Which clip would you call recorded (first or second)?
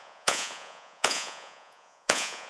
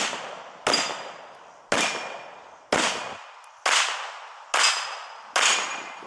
second